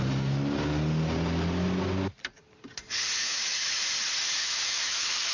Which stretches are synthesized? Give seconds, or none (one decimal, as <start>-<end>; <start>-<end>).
3.2-3.7; 4.4-5.3